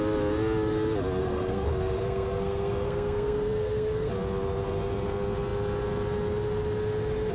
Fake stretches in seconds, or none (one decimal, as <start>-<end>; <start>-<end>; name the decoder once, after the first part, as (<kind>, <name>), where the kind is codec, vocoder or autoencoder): 1.2-4.1 (codec, SNAC)